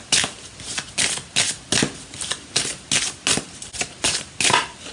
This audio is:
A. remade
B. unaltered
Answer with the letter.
B